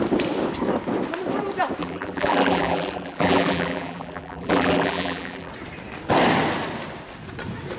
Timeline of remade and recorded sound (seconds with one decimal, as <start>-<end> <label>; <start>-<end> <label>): 0.0-1.8 recorded; 1.8-5.5 remade; 5.5-7.8 recorded